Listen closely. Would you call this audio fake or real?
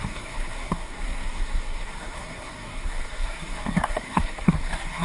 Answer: fake